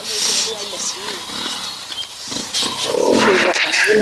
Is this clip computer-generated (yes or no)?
no